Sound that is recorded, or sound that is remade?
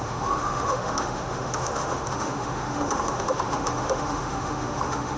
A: remade